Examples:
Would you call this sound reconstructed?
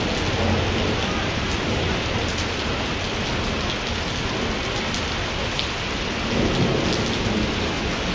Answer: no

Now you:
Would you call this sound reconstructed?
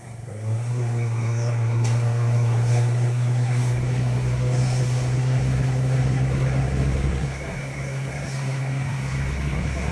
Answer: yes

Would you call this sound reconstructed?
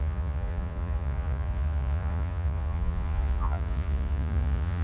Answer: yes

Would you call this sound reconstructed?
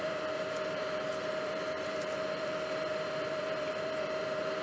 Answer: yes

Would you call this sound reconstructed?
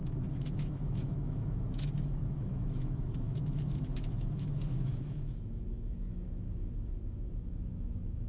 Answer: yes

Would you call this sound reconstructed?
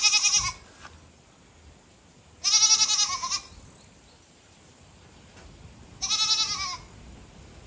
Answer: no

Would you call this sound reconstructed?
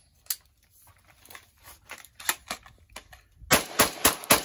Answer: no